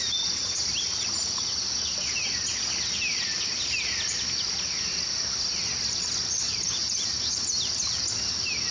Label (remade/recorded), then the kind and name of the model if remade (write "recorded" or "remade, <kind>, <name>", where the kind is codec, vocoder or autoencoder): recorded